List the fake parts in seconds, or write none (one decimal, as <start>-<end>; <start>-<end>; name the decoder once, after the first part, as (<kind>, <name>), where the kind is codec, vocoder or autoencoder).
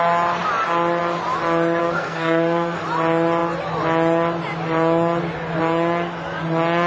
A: 1.8-2.8 (codec, SNAC)